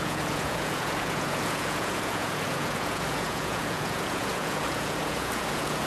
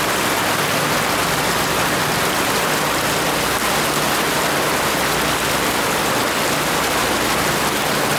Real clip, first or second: second